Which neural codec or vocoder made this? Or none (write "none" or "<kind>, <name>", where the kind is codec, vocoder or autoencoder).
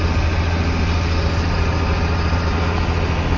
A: none